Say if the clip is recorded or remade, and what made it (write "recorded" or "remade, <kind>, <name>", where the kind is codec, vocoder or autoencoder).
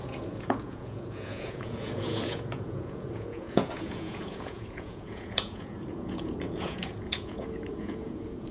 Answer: remade, vocoder, Vocos